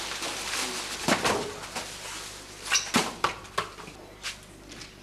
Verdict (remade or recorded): recorded